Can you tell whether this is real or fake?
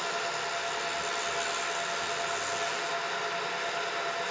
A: real